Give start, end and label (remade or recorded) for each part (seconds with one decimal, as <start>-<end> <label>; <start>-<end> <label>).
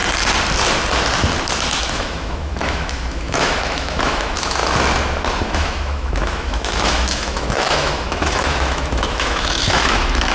0.0-1.8 recorded; 1.8-4.6 remade; 4.6-5.3 recorded; 5.3-10.3 remade